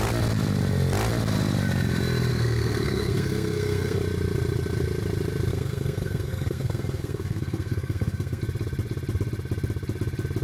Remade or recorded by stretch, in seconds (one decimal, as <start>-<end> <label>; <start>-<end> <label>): 0.0-2.3 recorded; 2.3-4.0 remade; 4.0-5.5 recorded; 5.5-8.4 remade; 8.4-10.4 recorded